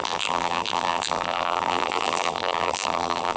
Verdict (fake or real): fake